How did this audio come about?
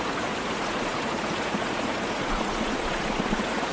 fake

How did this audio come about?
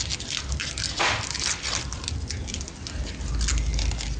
real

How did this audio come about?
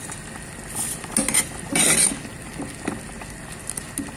real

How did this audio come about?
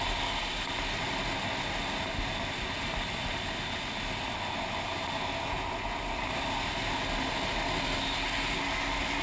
real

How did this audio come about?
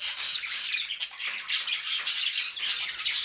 real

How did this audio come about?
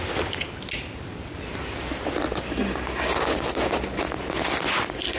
real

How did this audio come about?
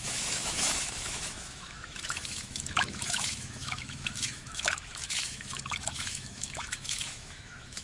fake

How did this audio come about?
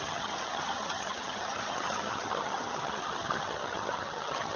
fake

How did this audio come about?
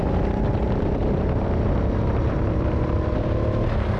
real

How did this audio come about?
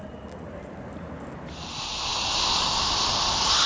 real